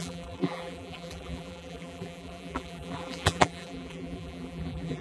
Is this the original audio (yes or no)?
no